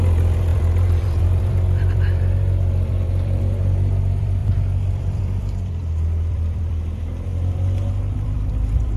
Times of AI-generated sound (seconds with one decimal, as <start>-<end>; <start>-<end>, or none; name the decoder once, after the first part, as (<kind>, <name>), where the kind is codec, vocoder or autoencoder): 0.0-9.0 (vocoder, BigVGAN v2)